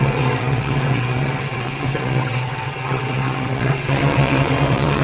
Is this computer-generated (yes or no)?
yes